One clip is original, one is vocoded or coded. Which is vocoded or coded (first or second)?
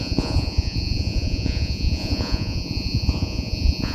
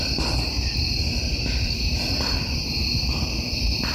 first